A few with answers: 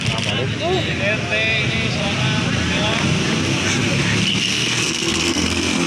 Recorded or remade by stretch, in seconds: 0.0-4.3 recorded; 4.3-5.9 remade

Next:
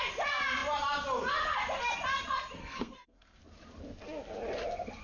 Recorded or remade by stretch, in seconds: 0.0-2.6 recorded; 2.6-3.4 remade; 3.4-5.0 recorded

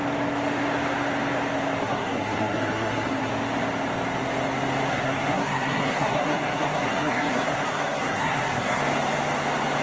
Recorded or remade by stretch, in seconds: 0.0-1.8 recorded; 1.8-3.3 remade; 3.3-4.9 recorded; 4.9-8.8 remade; 8.8-9.8 recorded